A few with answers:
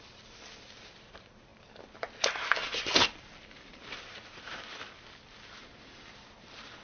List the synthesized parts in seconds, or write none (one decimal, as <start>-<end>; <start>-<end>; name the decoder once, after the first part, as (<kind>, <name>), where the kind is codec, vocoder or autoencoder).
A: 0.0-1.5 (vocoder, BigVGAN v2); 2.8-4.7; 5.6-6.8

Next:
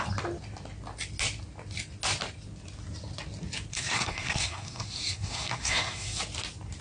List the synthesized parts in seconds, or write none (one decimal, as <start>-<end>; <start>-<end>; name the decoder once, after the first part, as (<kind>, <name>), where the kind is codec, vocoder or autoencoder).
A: 3.7-6.2 (codec, SNAC)

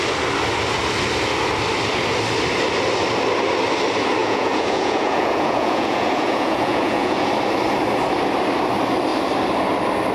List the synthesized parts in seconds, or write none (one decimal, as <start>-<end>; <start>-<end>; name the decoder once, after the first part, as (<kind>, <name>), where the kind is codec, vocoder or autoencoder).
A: 4.2-7.3 (vocoder, Vocos)

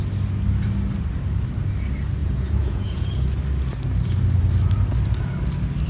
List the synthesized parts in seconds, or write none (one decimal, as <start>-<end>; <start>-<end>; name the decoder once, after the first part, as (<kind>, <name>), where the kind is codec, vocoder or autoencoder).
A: 2.2-3.1 (vocoder, Vocos)

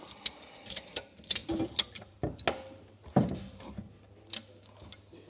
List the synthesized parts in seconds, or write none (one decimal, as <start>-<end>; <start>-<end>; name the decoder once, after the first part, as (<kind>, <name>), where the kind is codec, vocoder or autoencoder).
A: none

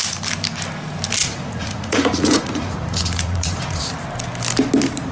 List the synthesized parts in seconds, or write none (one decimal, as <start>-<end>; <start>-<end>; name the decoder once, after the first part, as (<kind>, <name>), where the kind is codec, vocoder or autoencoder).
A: 1.2-3.8 (vocoder, Vocos)

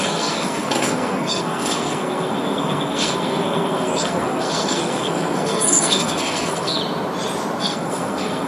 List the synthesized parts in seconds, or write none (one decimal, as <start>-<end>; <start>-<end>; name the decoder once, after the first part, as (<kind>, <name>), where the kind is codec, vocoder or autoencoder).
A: 0.0-6.8 (codec, SNAC); 7.6-8.5

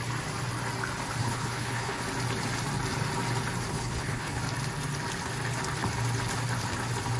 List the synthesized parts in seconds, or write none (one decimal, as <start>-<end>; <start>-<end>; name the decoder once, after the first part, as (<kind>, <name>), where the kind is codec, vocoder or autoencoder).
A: 1.2-2.0 (codec, HILCodec); 3.7-4.4